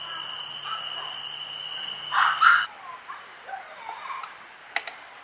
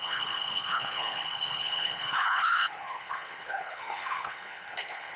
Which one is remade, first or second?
second